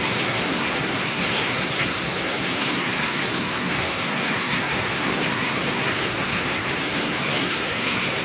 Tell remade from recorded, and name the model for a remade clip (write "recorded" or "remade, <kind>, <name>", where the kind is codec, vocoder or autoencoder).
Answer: remade, codec, SNAC